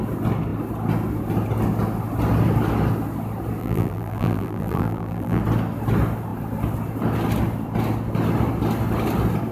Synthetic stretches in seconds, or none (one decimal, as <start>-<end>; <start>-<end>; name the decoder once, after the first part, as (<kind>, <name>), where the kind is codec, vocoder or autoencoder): 3.6-5.4 (vocoder, BigVGAN v2)